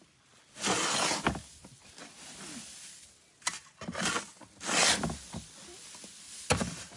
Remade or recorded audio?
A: recorded